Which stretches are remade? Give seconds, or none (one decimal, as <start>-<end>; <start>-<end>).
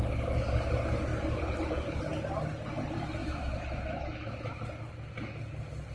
3.2-4.5